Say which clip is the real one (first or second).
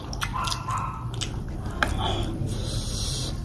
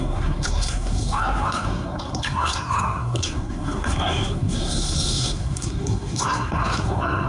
first